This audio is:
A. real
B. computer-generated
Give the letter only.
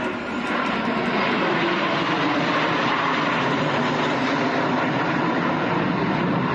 A